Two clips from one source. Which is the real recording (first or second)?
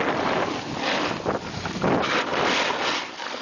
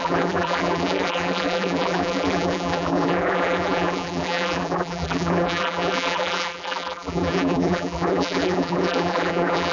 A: first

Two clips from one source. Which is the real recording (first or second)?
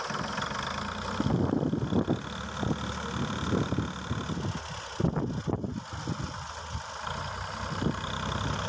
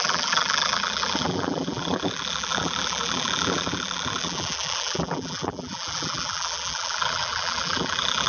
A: first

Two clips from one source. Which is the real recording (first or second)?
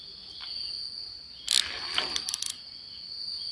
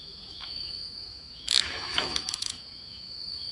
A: first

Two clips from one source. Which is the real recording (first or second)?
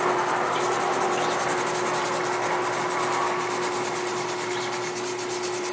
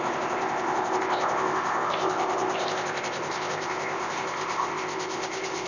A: first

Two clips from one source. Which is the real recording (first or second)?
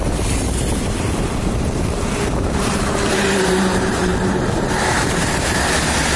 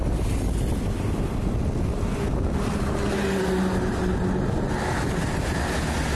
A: second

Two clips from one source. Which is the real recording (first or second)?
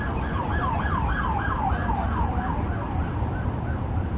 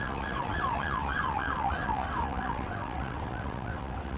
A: first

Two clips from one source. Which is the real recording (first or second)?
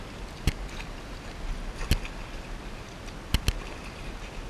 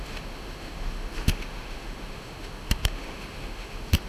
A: first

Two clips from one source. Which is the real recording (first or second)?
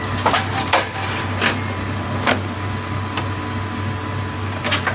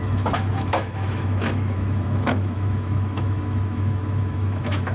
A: first